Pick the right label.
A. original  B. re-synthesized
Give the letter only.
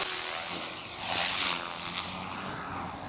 A